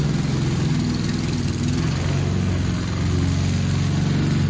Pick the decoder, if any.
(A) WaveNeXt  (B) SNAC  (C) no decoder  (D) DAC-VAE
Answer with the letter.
C